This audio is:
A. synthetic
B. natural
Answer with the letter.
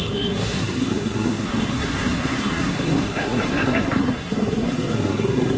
A